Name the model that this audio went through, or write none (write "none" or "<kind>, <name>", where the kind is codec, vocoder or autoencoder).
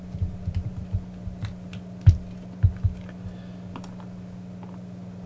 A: none